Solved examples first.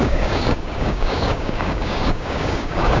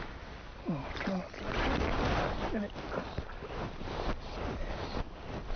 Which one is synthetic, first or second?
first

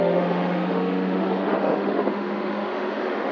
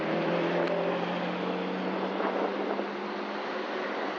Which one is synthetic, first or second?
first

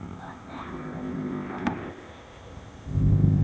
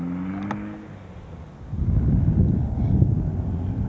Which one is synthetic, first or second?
first